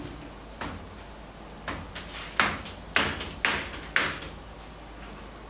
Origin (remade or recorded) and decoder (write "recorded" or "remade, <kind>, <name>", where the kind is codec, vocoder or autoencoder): recorded